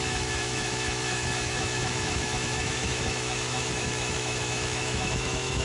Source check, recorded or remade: remade